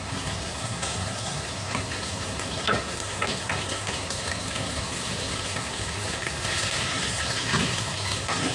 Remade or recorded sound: remade